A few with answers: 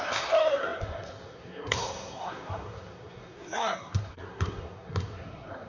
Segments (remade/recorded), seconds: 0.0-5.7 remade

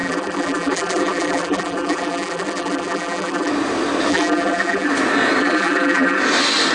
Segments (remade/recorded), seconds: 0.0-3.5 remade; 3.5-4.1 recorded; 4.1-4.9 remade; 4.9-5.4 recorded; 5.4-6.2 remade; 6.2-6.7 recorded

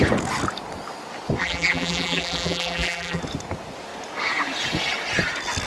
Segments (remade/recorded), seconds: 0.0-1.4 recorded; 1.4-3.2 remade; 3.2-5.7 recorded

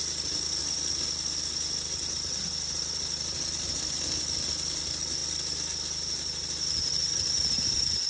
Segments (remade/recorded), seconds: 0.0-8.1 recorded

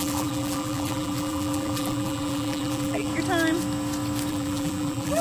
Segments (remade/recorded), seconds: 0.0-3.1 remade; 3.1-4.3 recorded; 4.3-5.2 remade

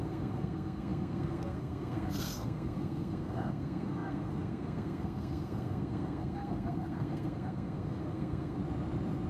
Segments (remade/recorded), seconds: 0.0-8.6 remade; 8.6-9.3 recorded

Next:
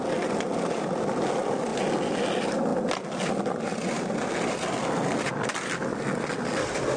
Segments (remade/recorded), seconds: 0.0-7.0 recorded